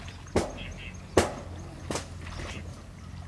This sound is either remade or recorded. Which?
recorded